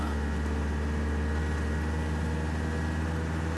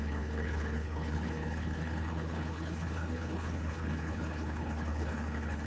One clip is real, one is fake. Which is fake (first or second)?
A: second